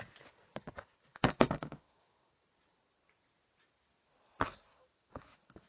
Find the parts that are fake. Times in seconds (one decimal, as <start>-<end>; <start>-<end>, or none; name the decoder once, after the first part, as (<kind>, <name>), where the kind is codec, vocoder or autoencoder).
1.1-2.3 (autoencoder, DAC-VAE); 4.7-5.7